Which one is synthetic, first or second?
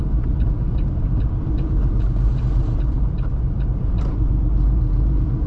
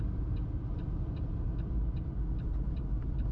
first